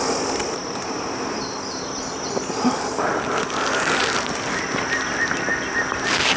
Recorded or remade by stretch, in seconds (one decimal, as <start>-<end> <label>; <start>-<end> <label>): 0.0-6.4 recorded